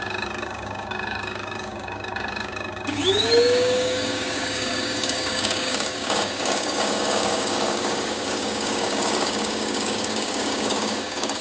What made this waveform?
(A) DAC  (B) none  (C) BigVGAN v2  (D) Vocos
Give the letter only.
A